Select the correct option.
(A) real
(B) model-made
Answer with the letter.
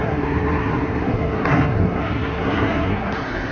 B